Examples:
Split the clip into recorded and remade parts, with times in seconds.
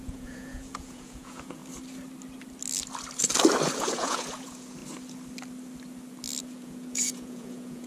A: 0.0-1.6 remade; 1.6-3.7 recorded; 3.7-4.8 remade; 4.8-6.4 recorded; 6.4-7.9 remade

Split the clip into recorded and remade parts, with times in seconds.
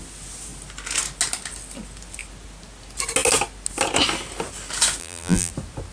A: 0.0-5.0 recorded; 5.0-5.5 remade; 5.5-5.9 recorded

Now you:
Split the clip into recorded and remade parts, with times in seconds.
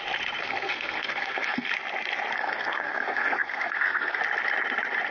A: 0.0-0.4 recorded; 0.4-1.7 remade; 1.7-2.4 recorded; 2.4-4.2 remade; 4.2-5.1 recorded